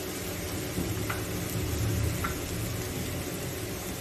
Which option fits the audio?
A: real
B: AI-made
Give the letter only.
A